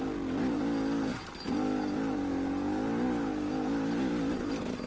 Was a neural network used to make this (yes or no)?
no